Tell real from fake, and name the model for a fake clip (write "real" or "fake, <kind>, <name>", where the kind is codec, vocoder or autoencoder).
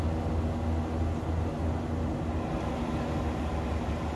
real